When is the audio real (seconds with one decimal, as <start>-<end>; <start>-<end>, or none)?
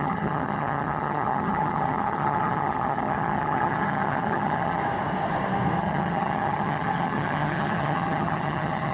4.8-5.8